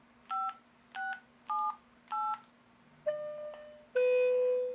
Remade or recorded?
recorded